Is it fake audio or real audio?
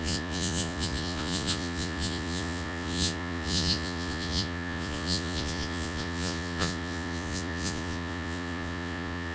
fake